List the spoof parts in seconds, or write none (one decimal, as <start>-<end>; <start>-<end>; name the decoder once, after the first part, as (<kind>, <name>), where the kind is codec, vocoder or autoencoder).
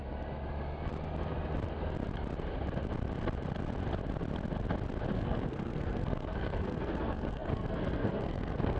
5.1-8.8 (codec, SNAC)